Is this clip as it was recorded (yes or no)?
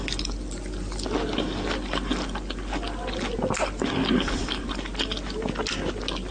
yes